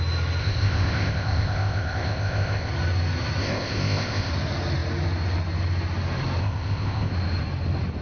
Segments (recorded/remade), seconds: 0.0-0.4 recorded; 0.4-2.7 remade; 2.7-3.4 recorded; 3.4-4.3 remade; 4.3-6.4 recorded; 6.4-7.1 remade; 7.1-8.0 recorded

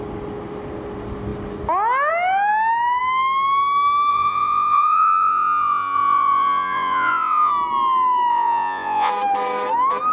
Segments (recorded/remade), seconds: 0.0-4.1 recorded; 4.1-7.5 remade; 7.5-8.3 recorded; 8.3-9.1 remade; 9.1-10.1 recorded